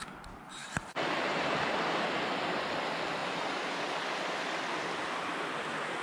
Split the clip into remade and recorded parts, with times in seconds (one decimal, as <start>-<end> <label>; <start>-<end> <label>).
0.0-0.6 recorded; 0.6-2.1 remade; 2.1-3.2 recorded; 3.2-3.8 remade; 3.8-6.0 recorded